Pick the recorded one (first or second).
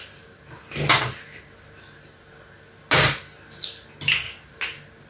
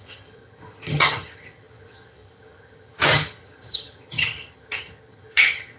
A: first